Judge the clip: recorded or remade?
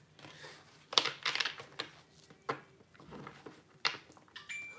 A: recorded